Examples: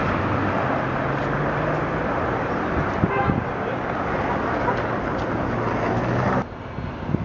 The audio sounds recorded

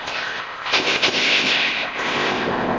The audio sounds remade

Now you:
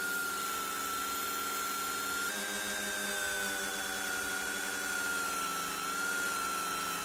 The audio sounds recorded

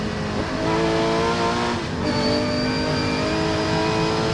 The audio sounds recorded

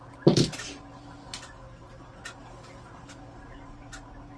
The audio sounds recorded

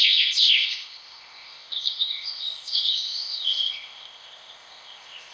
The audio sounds remade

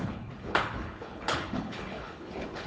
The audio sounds remade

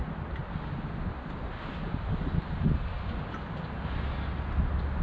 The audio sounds recorded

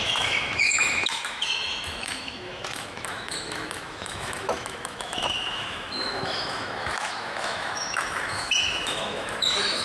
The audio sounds remade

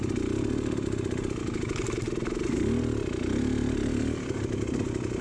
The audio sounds recorded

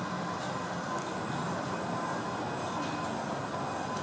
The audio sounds recorded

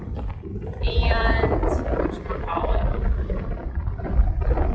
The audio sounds remade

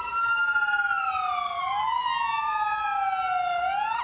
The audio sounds recorded